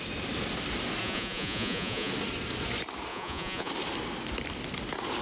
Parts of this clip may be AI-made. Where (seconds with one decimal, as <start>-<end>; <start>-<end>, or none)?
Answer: 1.0-2.1; 3.1-3.7